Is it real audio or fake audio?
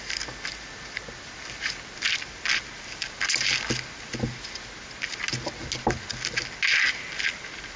real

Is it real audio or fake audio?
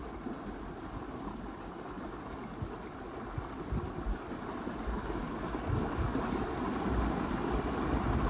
real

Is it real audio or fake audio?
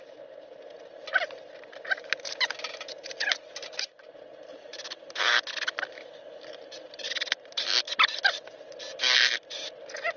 real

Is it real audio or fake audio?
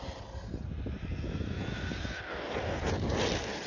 real